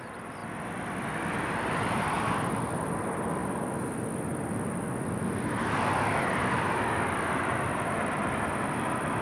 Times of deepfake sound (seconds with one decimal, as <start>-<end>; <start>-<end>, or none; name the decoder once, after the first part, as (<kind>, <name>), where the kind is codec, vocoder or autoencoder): 0.0-0.4 (vocoder, BigVGAN v2); 1.6-3.4; 4.4-9.2